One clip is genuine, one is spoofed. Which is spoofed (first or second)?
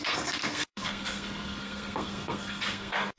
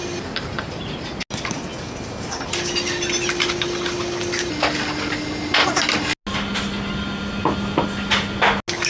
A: first